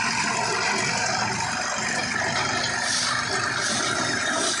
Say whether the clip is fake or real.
real